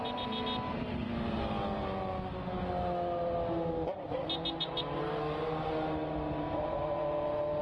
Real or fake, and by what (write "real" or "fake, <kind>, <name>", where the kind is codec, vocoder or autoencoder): real